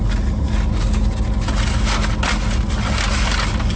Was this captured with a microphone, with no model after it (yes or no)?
yes